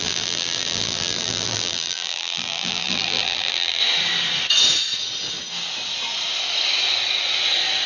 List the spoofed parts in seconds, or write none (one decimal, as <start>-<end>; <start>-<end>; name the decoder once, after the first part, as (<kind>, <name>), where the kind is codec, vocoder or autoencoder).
0.0-3.8 (vocoder, BigVGAN v2)